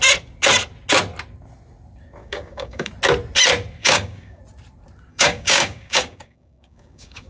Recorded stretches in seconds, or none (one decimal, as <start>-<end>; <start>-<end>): 0.0-2.2; 2.9-3.8; 4.4-5.1